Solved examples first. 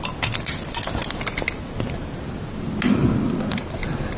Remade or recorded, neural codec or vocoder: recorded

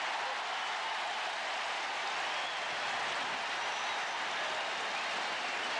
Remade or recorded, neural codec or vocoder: recorded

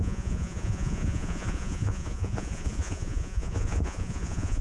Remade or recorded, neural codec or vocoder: remade, vocoder, Vocos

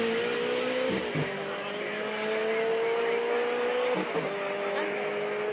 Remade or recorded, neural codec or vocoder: recorded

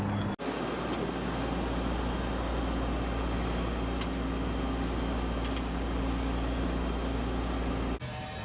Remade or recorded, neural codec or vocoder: recorded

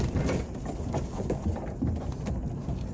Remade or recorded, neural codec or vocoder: recorded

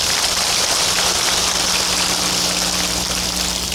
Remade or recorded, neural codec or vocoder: recorded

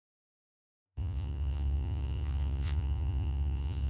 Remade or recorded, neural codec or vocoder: remade, vocoder, Vocos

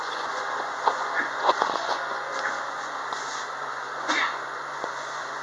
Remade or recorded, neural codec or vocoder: remade, vocoder, Vocos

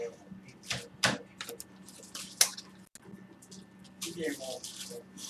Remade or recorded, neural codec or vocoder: recorded